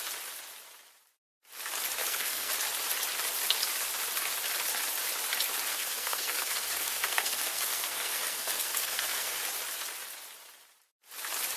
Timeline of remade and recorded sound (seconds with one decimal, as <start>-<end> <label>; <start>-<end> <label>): 0.0-2.0 recorded; 2.0-2.5 remade; 2.5-5.7 recorded; 5.7-9.4 remade; 9.4-11.6 recorded